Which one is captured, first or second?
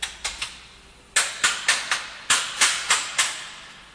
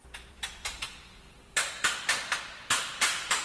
first